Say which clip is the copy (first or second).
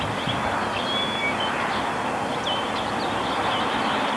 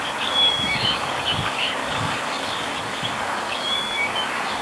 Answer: second